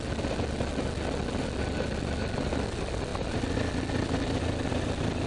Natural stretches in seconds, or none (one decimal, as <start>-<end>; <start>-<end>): 0.0-5.3